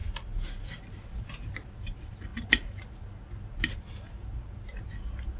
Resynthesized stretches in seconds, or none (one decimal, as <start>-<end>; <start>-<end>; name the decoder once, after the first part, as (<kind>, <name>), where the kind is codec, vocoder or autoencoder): none